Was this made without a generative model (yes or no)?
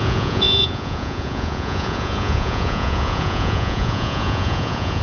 no